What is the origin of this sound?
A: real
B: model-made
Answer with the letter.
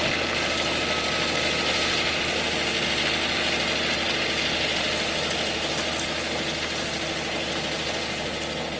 A